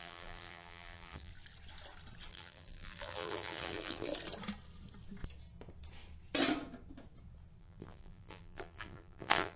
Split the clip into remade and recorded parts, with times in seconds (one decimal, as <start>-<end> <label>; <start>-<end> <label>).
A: 0.0-1.3 remade; 1.3-2.3 recorded; 2.3-4.1 remade; 4.1-7.6 recorded; 7.6-9.6 remade